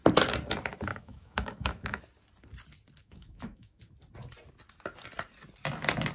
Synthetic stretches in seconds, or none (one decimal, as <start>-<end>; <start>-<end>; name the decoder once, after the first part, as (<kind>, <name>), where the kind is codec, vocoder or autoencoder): 0.9-2.0 (autoencoder, DAC-VAE); 3.0-3.8